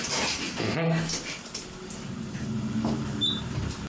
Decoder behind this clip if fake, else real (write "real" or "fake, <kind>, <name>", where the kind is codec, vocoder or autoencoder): real